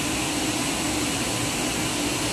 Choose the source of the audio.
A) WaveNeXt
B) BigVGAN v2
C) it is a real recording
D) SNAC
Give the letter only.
B